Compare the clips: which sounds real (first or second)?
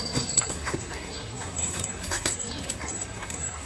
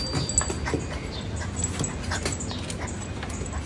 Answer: second